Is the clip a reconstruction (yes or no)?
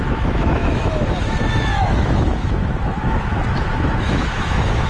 yes